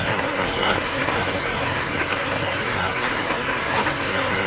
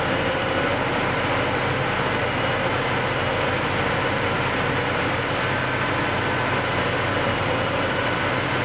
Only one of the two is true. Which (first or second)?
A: second